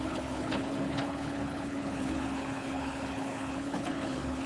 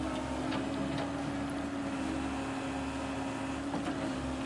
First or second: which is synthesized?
first